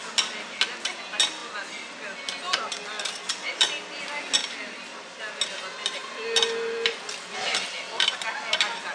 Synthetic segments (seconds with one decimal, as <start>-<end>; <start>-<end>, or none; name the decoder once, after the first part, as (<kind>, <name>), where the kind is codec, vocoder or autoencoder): 4.4-5.2 (vocoder, BigVGAN v2); 7.5-8.2